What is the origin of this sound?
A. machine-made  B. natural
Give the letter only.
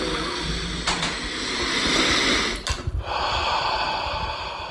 B